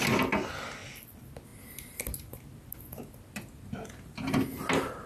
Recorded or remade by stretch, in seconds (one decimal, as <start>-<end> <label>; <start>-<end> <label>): 0.0-5.1 recorded